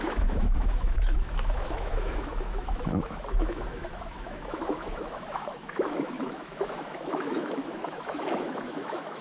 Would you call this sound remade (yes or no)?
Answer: yes